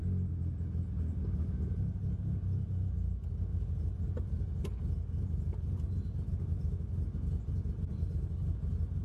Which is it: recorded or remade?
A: recorded